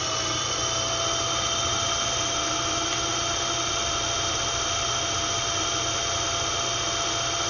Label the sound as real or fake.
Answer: real